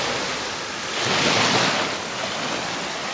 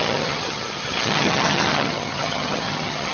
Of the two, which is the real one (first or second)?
first